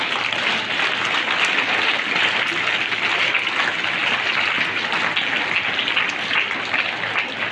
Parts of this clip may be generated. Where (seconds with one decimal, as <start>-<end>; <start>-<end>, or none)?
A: none